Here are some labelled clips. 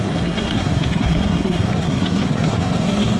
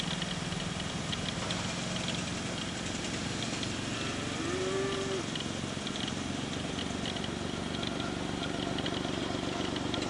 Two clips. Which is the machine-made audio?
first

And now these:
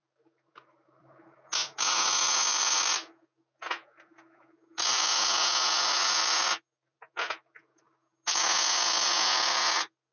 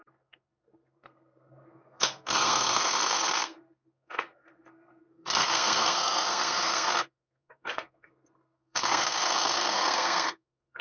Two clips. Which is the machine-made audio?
second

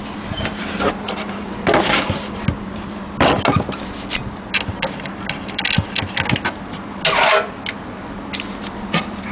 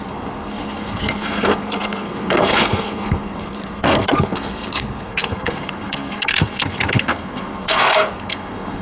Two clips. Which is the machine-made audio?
second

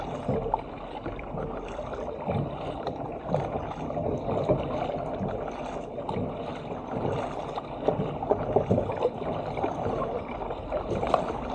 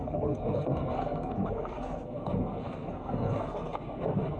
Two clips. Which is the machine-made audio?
second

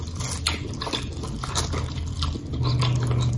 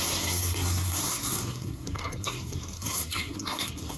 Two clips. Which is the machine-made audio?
second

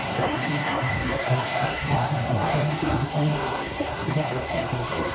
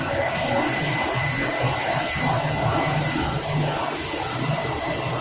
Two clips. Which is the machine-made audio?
first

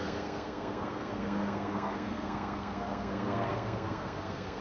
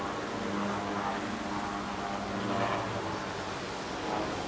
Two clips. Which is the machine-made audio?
first